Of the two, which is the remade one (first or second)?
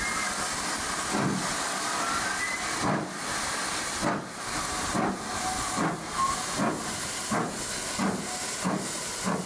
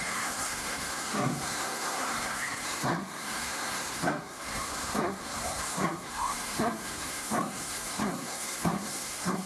second